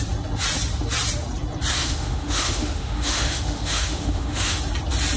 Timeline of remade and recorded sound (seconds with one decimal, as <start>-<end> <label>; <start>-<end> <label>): 0.0-1.7 recorded; 1.7-4.6 remade; 4.6-5.2 recorded